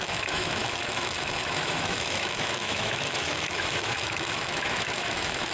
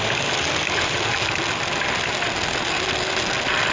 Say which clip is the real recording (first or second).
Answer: second